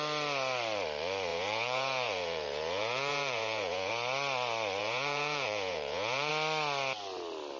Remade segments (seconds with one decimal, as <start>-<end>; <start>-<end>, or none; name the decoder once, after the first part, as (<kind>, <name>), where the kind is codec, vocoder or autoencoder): 1.3-3.9 (vocoder, Vocos); 4.8-6.3